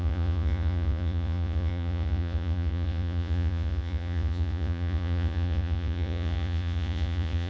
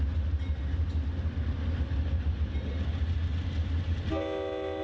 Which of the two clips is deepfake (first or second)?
first